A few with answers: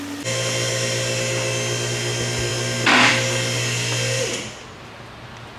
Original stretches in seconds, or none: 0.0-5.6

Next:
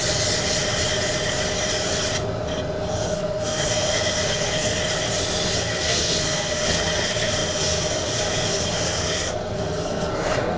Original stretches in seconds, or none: 0.0-2.9; 4.8-5.6

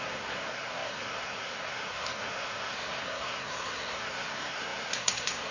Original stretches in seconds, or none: none